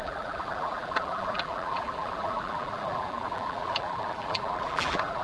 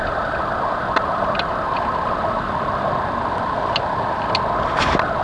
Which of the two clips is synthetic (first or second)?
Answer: first